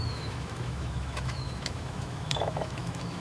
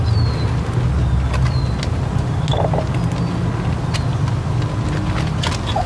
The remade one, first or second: first